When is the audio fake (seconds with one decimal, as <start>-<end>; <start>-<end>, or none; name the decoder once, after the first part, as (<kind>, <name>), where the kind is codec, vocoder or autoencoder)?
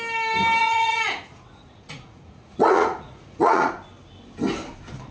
0.6-3.7 (vocoder, Vocos)